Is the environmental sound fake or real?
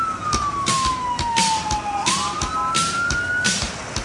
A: real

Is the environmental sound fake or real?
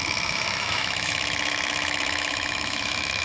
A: fake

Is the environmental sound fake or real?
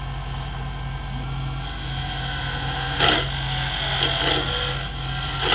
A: real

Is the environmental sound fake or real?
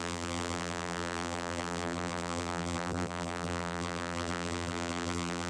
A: fake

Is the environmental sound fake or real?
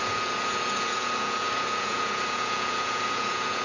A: fake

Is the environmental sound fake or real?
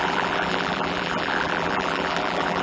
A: fake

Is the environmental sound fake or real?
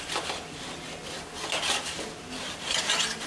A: fake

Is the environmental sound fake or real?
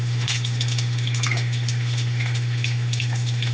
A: fake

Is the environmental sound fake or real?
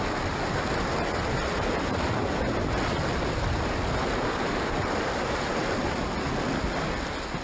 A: real